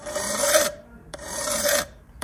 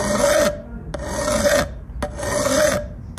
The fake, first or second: first